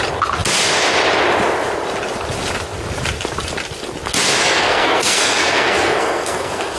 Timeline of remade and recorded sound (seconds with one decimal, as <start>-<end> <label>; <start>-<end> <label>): 0.0-4.4 recorded; 4.4-6.8 remade